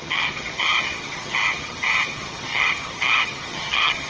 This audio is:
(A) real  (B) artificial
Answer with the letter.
B